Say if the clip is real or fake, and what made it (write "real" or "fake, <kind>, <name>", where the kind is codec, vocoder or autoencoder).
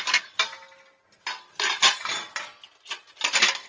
real